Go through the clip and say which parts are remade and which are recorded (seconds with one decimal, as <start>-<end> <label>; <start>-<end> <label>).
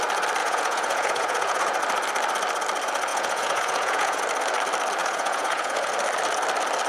0.0-0.4 recorded; 0.4-1.8 remade; 1.8-3.1 recorded; 3.1-4.2 remade; 4.2-5.0 recorded; 5.0-5.9 remade; 5.9-6.9 recorded